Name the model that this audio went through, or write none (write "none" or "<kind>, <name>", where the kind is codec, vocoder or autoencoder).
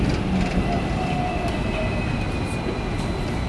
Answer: none